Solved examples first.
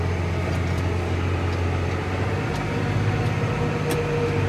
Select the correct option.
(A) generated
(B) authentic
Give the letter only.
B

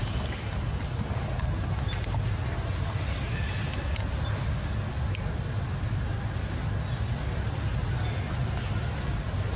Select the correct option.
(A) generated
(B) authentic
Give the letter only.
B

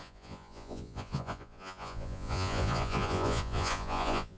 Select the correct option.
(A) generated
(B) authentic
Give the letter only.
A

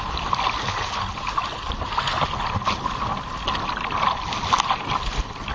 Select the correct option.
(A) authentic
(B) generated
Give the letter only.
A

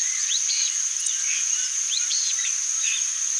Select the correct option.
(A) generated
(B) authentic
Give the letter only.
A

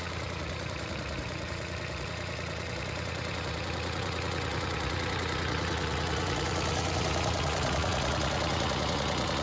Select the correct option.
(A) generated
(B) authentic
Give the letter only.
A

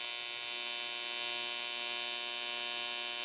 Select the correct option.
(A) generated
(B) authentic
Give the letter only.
B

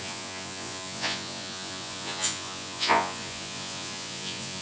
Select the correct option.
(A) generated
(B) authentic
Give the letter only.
A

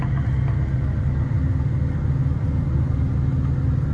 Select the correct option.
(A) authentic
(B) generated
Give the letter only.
A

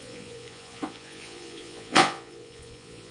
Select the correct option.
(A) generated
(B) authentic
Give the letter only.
A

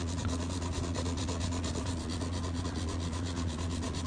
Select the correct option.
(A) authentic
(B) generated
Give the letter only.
B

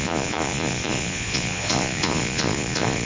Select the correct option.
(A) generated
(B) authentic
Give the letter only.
A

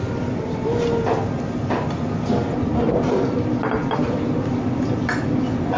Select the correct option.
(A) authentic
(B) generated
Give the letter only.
A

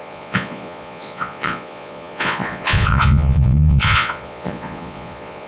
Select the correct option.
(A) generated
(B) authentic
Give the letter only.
A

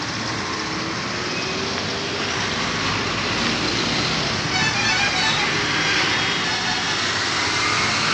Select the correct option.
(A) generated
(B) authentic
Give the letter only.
B